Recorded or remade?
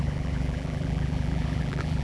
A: remade